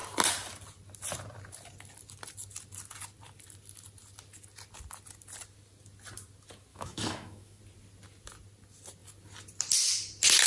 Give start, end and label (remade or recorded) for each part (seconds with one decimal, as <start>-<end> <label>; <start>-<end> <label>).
0.0-6.7 recorded; 6.7-7.6 remade; 7.6-10.5 recorded